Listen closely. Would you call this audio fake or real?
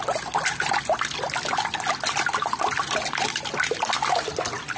real